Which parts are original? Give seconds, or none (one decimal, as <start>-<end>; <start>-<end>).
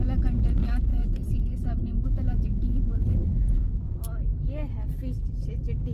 0.0-0.9; 3.9-5.9